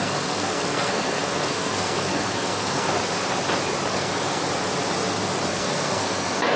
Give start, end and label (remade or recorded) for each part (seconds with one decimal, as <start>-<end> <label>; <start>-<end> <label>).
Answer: 0.0-3.0 remade; 3.0-3.9 recorded; 3.9-4.4 remade; 4.4-5.5 recorded; 5.5-6.6 remade